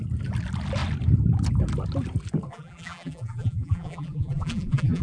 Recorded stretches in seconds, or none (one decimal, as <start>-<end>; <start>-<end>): 0.0-2.5